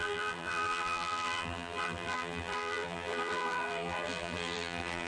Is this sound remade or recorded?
remade